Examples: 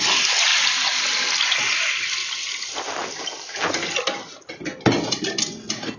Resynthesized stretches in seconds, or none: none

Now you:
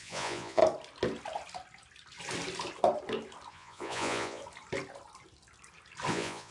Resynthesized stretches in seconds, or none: 0.0-0.6 (vocoder, Vocos); 3.5-4.4; 6.1-6.5

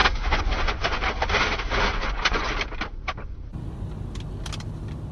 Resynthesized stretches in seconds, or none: 0.0-1.0 (vocoder, Vocos); 1.9-2.5

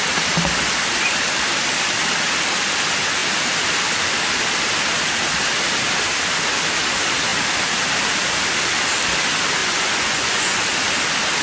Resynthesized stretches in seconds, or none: 9.6-10.6 (vocoder, Vocos)